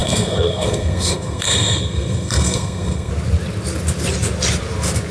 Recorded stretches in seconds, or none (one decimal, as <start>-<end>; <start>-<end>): 3.1-5.1